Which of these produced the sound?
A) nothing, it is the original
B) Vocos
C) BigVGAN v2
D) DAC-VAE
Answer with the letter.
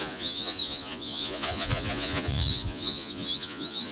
B